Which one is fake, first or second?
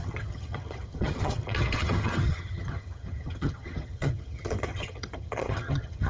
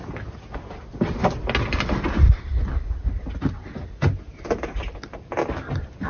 first